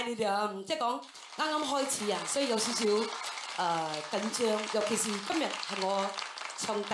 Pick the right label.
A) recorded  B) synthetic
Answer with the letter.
A